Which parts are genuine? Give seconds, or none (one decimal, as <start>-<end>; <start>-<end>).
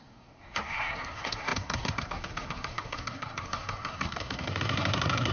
none